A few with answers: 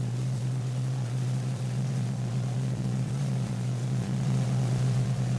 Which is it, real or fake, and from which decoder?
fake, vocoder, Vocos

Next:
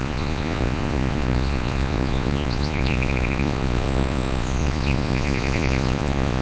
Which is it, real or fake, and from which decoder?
fake, vocoder, Vocos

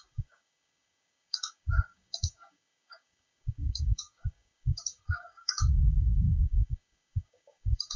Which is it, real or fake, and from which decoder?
fake, codec, DAC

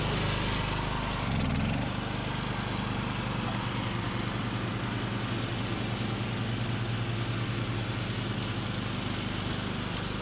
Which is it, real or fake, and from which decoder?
real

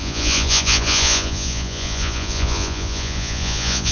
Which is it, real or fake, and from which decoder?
fake, vocoder, Vocos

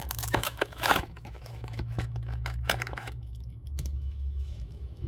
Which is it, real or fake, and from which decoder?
fake, autoencoder, DAC-VAE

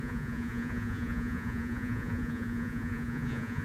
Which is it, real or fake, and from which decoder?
fake, vocoder, Vocos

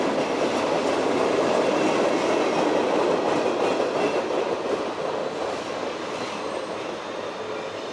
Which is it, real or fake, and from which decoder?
real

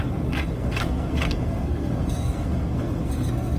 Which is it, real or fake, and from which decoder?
fake, codec, SNAC